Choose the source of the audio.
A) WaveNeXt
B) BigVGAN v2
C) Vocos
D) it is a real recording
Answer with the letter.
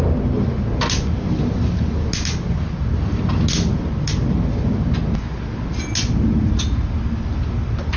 D